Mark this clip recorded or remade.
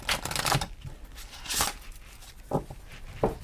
recorded